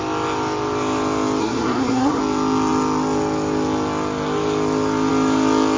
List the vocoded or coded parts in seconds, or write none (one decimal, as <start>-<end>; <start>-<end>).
1.4-2.2